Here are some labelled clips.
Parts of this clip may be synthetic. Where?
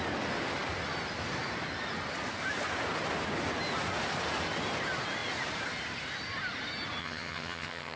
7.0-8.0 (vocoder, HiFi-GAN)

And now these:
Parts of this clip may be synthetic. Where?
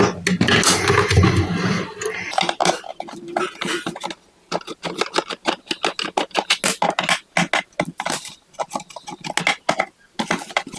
none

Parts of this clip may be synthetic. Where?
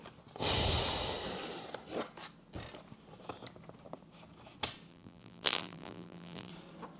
4.9-6.5 (vocoder, BigVGAN v2)